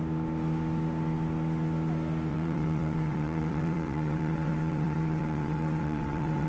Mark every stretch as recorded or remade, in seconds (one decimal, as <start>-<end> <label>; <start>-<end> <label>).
0.0-2.3 recorded; 2.3-6.5 remade